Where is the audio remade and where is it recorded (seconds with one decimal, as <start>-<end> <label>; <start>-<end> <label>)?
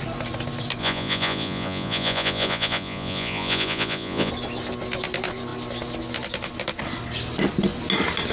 0.0-0.8 recorded; 0.8-4.3 remade; 4.3-8.3 recorded